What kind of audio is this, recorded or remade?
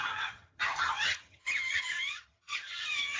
remade